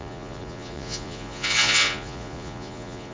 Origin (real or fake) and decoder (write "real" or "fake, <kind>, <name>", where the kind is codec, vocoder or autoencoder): fake, vocoder, Vocos